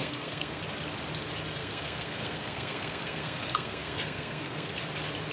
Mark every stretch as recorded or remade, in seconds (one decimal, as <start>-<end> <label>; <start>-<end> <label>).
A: 0.0-0.6 remade; 0.6-1.6 recorded; 1.6-4.8 remade; 4.8-5.3 recorded